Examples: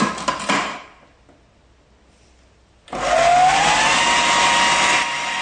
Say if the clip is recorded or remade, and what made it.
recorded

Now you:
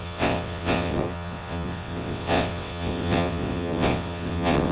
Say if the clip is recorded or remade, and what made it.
remade, vocoder, WaveNeXt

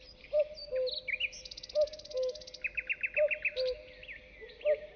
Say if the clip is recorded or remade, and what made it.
recorded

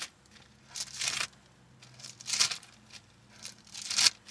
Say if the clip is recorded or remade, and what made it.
recorded